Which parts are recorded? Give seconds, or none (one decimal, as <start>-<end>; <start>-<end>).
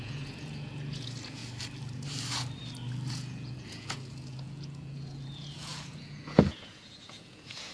1.4-3.1